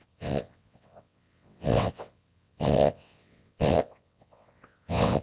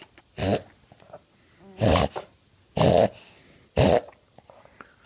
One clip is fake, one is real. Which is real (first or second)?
second